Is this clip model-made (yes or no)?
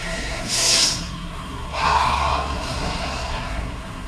yes